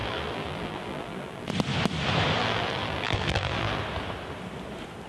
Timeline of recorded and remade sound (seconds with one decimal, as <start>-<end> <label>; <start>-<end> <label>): 0.0-1.5 remade; 1.5-2.4 recorded; 2.4-3.8 remade; 3.8-5.1 recorded